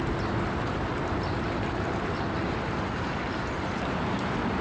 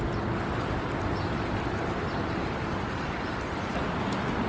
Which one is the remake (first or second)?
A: first